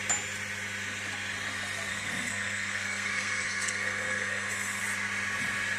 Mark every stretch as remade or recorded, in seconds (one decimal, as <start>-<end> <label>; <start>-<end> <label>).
0.0-1.9 recorded; 1.9-4.8 remade; 4.8-5.8 recorded